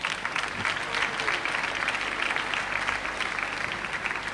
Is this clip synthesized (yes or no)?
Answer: no